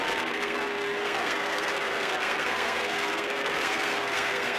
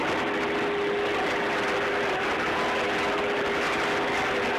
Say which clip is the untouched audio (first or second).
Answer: second